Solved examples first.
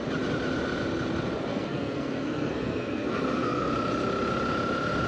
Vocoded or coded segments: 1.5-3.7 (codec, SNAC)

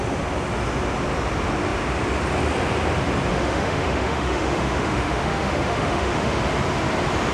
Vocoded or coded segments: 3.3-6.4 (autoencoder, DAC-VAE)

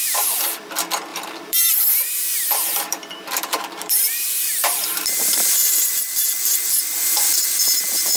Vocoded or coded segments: 0.0-0.7 (vocoder, BigVGAN v2); 1.1-6.0

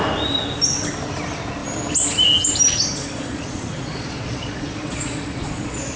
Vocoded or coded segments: 3.0-6.0 (vocoder, Vocos)

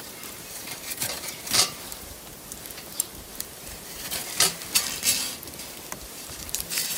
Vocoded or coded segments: 0.0-4.2 (vocoder, BigVGAN v2); 6.0-7.0